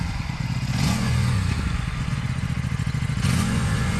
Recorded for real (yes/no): no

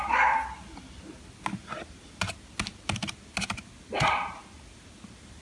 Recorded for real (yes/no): yes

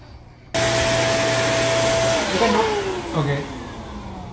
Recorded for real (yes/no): yes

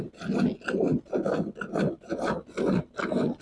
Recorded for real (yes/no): yes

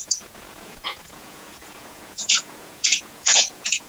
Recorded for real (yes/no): no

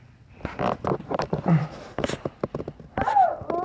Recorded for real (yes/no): yes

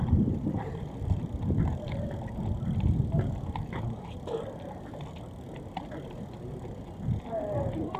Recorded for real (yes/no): yes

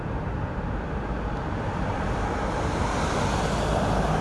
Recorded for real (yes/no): yes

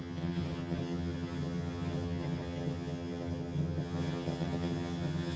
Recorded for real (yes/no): no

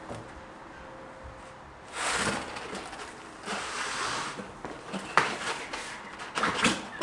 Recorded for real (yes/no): yes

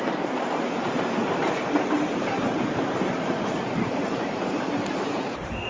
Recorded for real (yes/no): no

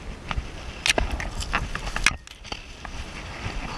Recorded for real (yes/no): yes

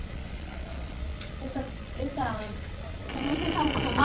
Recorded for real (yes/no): no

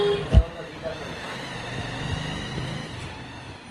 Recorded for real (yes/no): yes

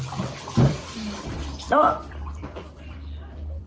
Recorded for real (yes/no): no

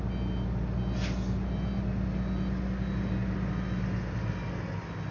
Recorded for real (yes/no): yes